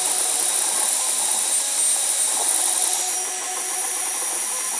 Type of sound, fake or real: real